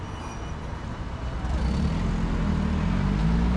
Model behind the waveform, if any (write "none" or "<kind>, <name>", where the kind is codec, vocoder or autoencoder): none